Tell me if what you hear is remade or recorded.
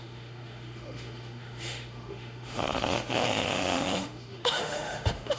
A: remade